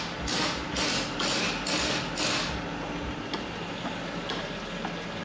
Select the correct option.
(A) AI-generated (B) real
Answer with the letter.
B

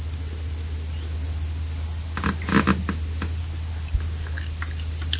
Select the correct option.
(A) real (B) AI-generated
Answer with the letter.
A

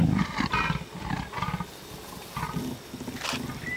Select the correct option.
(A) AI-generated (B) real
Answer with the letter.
B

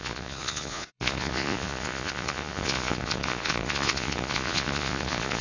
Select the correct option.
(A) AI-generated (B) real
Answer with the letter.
A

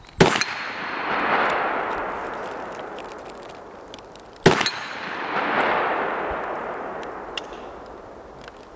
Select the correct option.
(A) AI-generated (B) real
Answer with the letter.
B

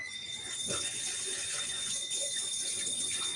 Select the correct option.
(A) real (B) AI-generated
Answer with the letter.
B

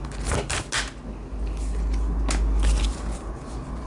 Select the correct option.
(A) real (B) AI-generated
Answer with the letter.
A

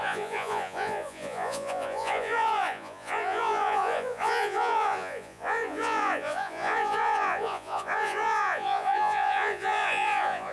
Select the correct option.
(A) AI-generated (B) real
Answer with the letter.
A